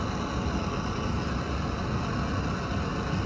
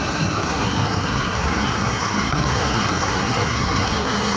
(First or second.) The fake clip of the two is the second